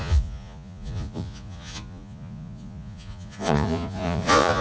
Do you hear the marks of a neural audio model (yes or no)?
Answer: yes